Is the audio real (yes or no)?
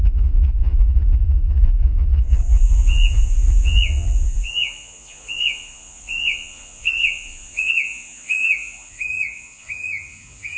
no